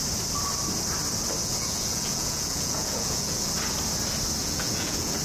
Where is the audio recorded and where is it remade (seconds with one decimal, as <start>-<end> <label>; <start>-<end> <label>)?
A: 0.0-1.4 recorded; 1.4-3.5 remade; 3.5-4.4 recorded; 4.4-5.2 remade